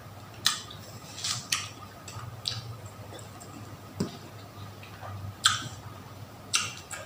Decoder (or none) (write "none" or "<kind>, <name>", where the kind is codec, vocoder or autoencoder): none